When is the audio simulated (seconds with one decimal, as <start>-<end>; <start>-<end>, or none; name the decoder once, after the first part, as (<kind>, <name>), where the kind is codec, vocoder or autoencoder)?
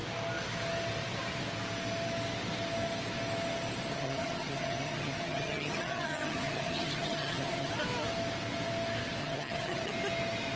3.9-7.7 (vocoder, HiFi-GAN); 9.2-9.9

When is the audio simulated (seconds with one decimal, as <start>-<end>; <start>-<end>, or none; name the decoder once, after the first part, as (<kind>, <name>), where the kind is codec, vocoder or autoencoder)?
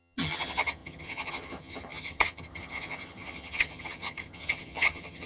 0.0-5.3 (vocoder, HiFi-GAN)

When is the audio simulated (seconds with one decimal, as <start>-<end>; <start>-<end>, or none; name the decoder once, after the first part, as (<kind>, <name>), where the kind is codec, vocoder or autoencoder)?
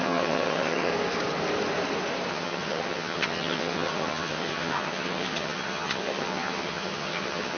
0.0-0.9 (vocoder, HiFi-GAN); 2.3-7.6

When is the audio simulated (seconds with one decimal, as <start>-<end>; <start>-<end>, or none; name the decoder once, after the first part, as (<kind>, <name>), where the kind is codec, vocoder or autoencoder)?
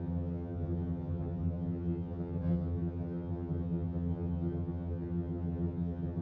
0.0-6.2 (vocoder, HiFi-GAN)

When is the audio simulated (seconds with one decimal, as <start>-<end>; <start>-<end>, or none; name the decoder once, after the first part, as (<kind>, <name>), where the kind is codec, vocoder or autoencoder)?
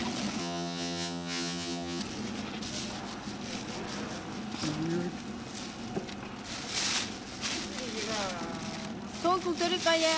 0.4-2.0 (vocoder, HiFi-GAN)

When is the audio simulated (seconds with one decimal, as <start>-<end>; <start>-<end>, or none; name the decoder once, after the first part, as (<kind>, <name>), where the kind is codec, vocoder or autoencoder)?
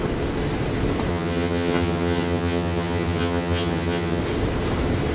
1.1-4.2 (vocoder, HiFi-GAN)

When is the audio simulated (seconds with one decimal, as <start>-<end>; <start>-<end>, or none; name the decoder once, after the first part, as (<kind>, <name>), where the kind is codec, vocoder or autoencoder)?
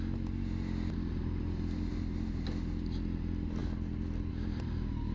none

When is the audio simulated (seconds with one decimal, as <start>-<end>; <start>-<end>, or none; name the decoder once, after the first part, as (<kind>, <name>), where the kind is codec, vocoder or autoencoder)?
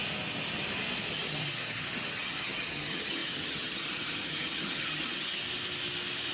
1.0-5.4 (vocoder, HiFi-GAN)